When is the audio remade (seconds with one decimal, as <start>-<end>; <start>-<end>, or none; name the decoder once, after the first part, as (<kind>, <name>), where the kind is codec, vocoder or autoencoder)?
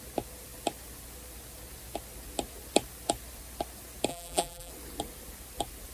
4.1-4.7 (vocoder, BigVGAN v2)